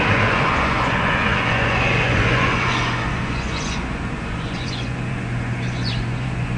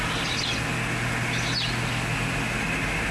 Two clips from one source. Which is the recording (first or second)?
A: second